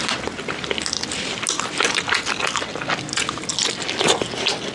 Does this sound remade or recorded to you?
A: recorded